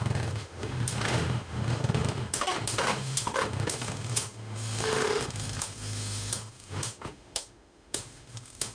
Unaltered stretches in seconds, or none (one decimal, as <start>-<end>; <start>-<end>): none